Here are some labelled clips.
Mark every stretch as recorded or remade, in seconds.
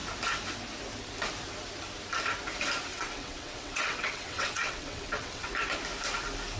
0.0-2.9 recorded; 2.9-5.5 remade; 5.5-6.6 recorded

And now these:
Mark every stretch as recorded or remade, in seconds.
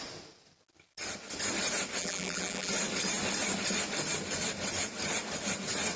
0.0-2.0 recorded; 2.0-2.7 remade; 2.7-6.0 recorded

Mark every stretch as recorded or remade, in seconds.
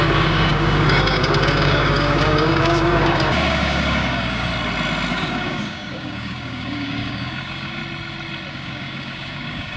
0.0-4.5 remade; 4.5-5.1 recorded; 5.1-7.8 remade; 7.8-8.5 recorded; 8.5-9.8 remade